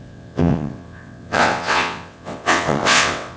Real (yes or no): no